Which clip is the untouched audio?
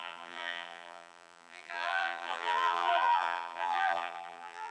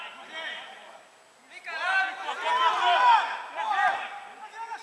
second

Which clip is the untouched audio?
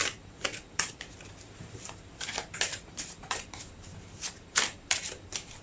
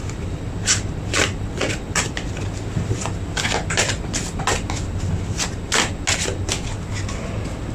second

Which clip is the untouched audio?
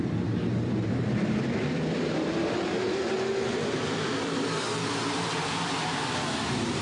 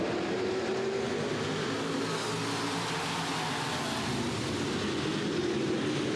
second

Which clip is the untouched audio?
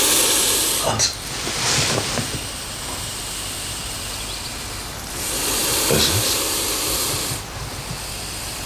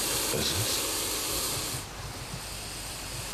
second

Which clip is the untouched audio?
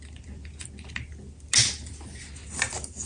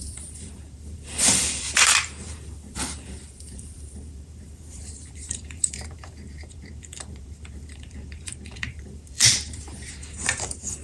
first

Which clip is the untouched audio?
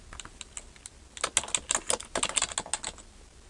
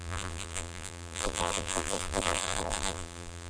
first